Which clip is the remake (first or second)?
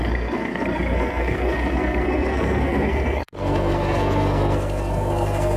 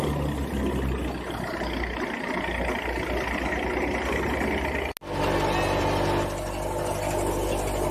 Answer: first